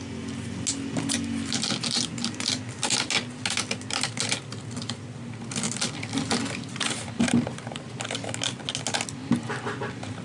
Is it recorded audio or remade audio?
recorded